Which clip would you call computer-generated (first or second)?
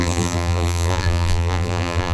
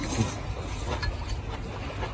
first